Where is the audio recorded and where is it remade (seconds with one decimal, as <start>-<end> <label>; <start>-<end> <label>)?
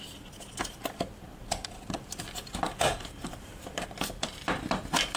0.0-1.6 recorded; 1.6-4.6 remade; 4.6-5.2 recorded